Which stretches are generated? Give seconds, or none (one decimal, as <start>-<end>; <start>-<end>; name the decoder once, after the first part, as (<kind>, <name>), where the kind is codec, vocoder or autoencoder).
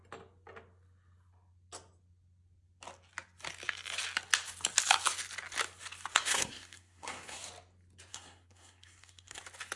6.1-7.5 (codec, SNAC); 8.1-9.4